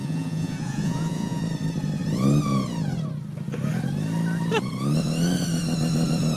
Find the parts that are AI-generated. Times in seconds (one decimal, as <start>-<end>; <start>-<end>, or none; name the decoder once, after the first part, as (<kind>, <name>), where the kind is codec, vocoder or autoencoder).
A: 0.0-1.4 (vocoder, Vocos)